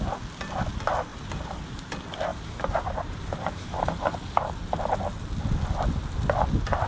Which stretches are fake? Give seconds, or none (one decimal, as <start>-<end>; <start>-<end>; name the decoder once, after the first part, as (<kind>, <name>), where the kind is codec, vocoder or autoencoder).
1.1-1.9 (vocoder, BigVGAN v2); 2.3-4.5